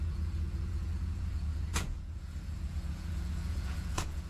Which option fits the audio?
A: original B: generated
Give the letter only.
B